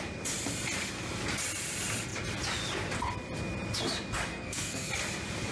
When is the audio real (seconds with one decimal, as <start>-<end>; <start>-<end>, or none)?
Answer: 0.0-4.3; 4.9-5.5